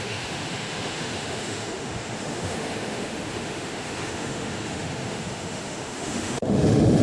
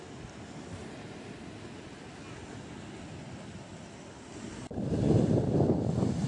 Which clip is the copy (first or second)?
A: first